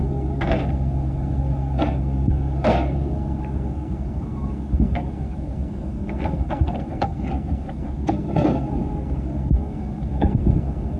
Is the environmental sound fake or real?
fake